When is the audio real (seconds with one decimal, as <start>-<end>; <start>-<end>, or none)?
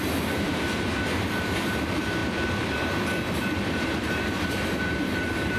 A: 0.5-1.0; 2.2-3.6